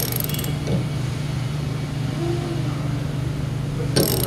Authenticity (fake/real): real